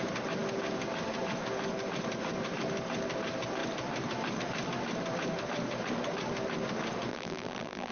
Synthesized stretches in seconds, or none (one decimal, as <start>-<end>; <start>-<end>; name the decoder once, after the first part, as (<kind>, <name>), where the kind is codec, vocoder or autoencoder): 7.1-7.9 (vocoder, BigVGAN v2)